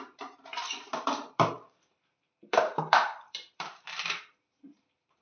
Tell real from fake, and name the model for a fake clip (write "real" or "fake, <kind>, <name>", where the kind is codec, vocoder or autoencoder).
fake, vocoder, BigVGAN v2